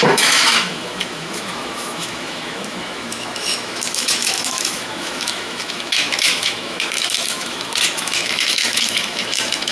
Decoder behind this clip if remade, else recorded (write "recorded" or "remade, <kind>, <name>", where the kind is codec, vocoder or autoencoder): remade, autoencoder, DAC-VAE